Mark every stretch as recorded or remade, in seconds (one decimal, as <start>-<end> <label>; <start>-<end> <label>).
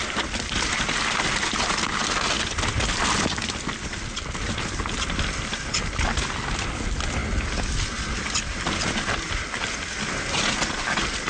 0.0-11.3 recorded